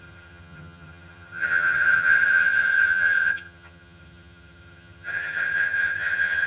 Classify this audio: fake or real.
fake